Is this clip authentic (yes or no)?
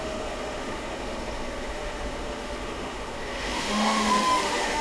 no